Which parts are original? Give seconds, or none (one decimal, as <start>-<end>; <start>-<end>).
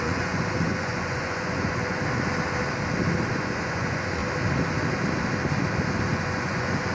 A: 2.0-3.3; 4.2-6.1